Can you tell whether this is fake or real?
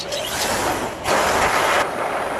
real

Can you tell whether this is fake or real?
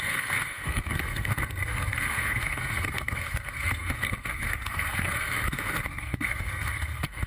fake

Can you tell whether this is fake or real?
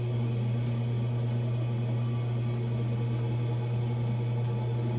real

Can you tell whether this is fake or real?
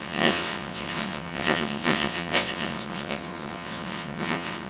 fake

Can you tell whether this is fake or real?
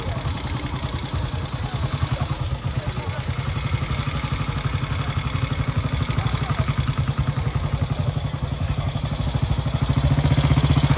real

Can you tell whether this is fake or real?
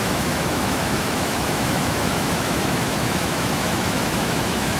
fake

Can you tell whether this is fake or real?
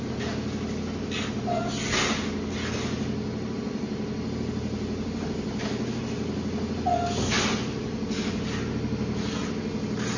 real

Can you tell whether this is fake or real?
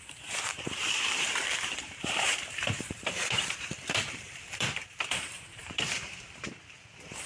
fake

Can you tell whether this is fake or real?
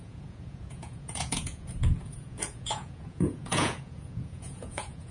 fake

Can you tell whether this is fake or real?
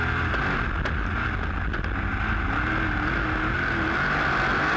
real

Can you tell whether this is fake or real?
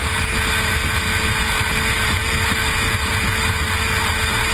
real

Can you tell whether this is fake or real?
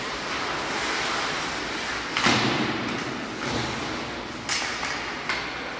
real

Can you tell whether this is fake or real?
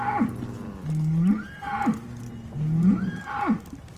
real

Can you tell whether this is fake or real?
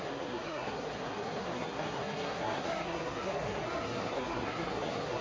fake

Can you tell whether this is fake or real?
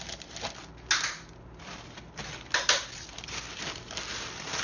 real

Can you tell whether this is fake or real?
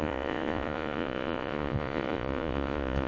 fake